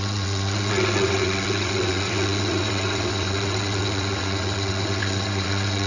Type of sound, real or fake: fake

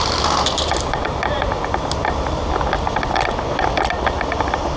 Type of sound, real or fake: real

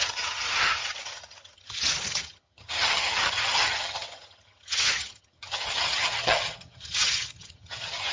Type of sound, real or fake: fake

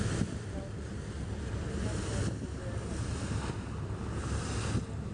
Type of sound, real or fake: real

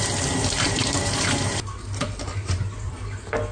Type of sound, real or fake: real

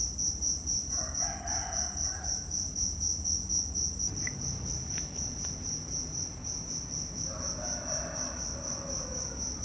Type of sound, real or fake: real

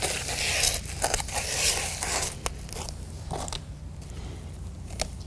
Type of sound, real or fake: real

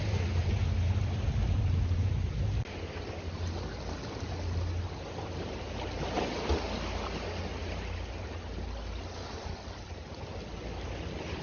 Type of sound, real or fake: real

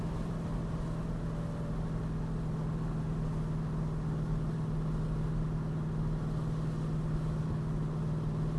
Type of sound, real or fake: real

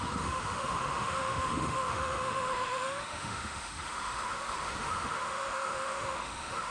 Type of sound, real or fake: fake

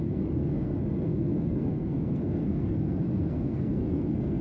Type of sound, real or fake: fake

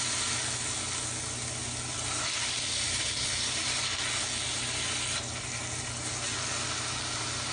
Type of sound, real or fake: real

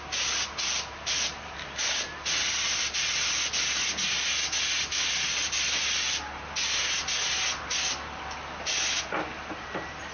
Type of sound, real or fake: real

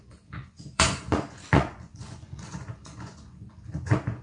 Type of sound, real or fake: fake